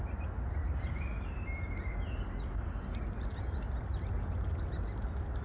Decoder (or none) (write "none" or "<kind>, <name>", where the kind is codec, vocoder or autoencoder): none